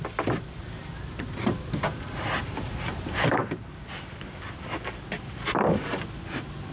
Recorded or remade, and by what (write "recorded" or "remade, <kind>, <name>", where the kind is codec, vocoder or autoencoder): recorded